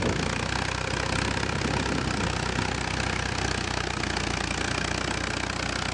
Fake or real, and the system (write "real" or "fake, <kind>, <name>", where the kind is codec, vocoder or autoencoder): real